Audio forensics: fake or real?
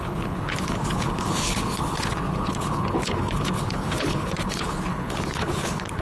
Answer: fake